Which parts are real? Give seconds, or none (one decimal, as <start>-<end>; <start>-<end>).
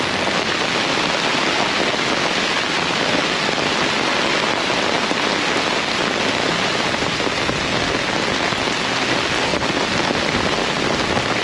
0.0-9.5; 10.8-11.4